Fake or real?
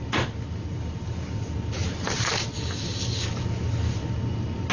real